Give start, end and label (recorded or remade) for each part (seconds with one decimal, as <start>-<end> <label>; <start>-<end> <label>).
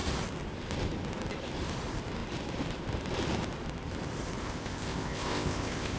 0.0-4.4 recorded; 4.4-6.0 remade